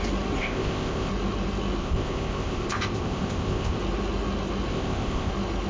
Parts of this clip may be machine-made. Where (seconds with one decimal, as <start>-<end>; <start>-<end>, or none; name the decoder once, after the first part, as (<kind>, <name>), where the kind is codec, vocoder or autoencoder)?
0.4-1.1 (codec, ZipCodec); 1.8-3.8; 4.7-5.3